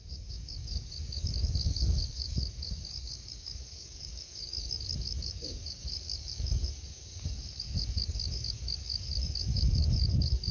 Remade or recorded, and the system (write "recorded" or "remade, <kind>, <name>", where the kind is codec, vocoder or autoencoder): remade, codec, DAC